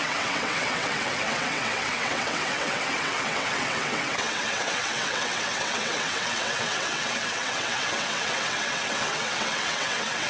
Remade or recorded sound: remade